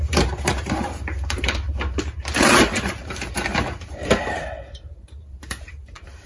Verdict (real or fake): fake